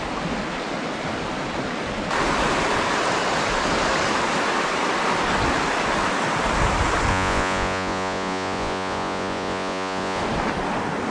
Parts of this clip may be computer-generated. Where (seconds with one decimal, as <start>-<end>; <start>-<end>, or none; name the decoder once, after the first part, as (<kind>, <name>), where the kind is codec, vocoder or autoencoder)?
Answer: 7.1-10.2 (vocoder, Vocos)